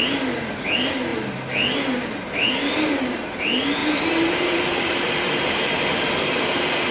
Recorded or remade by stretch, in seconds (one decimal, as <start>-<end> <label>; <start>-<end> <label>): 0.0-3.8 recorded; 3.8-6.1 remade; 6.1-6.9 recorded